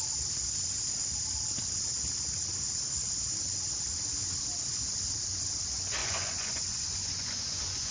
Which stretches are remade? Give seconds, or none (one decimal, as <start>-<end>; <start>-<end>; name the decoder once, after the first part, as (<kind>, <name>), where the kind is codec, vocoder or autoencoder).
6.0-7.9 (vocoder, Vocos)